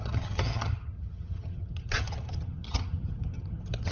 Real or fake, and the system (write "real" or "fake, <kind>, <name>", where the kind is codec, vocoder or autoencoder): fake, vocoder, HiFi-GAN